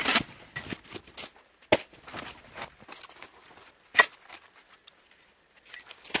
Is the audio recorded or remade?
recorded